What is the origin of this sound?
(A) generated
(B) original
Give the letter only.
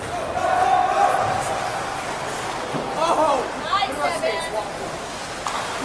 B